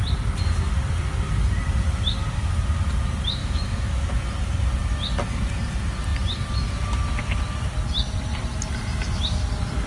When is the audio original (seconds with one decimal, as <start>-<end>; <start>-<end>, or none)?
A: 0.0-3.4; 4.1-9.9